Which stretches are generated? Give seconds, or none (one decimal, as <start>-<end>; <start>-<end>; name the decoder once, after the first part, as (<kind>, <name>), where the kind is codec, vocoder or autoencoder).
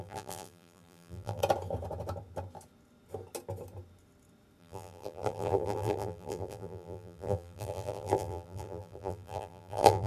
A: 0.0-1.4 (vocoder, BigVGAN v2); 4.6-10.1